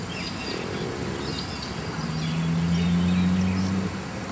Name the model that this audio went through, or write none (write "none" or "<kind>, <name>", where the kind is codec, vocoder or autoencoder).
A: none